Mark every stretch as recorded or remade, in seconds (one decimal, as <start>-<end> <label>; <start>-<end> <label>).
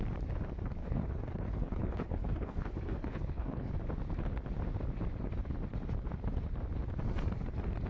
0.0-0.8 recorded; 0.8-3.7 remade; 3.7-7.9 recorded